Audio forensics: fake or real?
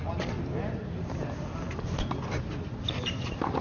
real